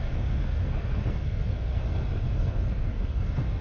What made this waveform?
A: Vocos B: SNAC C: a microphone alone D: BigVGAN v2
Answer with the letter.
B